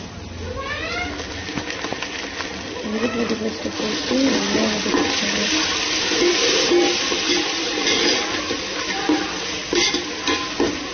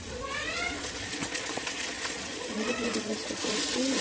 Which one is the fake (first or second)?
second